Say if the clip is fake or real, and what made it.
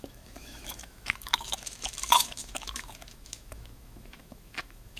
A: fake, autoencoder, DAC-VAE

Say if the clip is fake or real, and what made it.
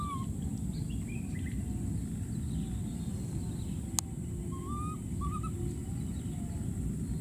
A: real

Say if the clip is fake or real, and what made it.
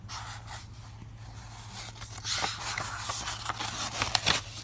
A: real